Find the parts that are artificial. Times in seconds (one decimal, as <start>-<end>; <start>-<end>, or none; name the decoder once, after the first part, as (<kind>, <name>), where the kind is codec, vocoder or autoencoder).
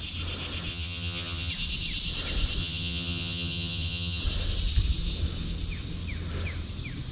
0.7-1.5 (vocoder, HiFi-GAN); 2.6-4.2